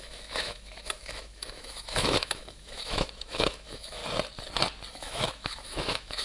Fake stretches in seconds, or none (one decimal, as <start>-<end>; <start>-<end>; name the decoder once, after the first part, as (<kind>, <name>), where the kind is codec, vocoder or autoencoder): 0.0-4.0 (autoencoder, DAC-VAE); 4.9-6.2